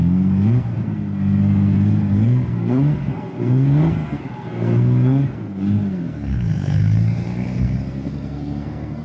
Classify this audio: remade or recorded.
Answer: remade